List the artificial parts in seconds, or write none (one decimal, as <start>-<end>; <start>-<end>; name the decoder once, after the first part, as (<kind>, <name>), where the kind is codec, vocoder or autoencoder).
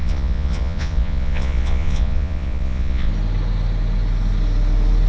0.0-3.1 (vocoder, Vocos)